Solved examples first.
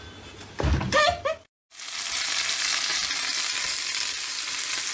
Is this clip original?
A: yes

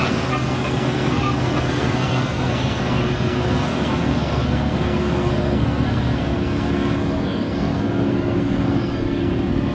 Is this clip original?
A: no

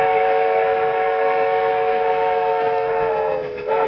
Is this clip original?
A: no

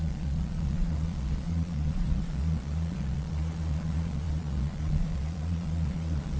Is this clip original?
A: no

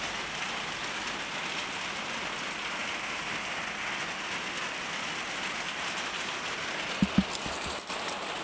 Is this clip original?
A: yes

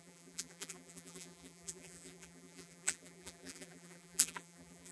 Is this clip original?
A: no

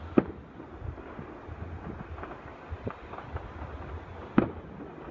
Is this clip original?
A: yes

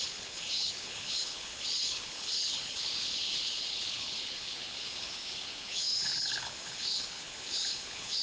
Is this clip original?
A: no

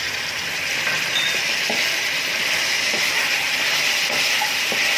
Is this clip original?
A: no